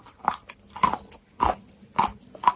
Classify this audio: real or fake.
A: real